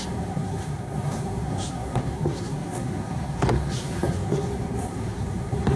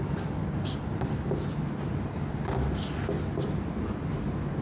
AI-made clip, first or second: first